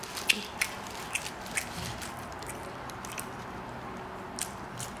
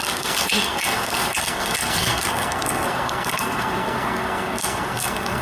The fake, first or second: second